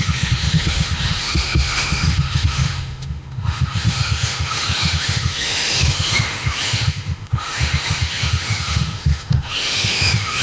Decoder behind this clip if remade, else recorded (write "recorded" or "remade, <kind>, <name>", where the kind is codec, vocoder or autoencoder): remade, autoencoder, DAC-VAE